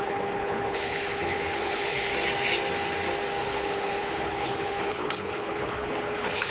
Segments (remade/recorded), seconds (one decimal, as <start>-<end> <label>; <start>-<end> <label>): 0.0-2.1 remade; 2.1-3.4 recorded; 3.4-6.5 remade